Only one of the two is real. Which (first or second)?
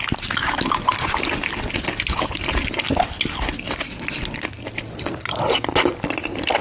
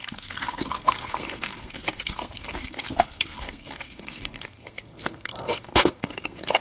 first